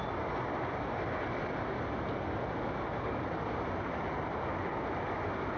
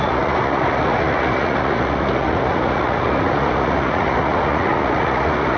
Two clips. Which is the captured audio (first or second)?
first